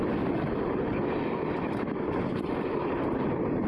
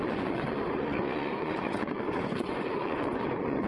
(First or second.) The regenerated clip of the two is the second